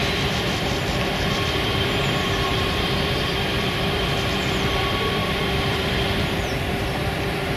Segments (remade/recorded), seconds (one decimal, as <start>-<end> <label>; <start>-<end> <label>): 0.0-7.6 remade